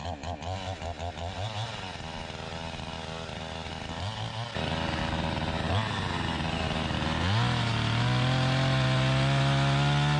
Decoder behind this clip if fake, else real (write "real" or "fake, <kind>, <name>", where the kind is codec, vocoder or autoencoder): real